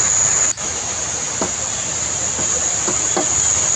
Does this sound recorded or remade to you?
recorded